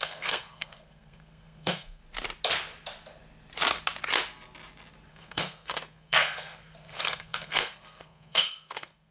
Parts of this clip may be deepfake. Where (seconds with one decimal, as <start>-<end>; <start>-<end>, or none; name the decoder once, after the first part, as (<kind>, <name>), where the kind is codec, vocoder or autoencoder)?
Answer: 0.0-2.0 (codec, SNAC); 5.1-9.1